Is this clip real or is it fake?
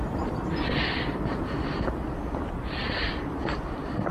fake